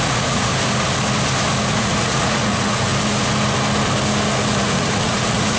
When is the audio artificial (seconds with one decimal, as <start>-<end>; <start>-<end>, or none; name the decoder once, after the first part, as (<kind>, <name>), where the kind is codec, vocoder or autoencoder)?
0.0-0.5 (vocoder, Vocos); 1.7-2.9; 4.5-5.6